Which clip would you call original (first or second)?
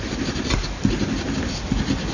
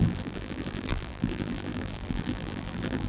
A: first